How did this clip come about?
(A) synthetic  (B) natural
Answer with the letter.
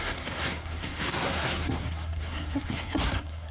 A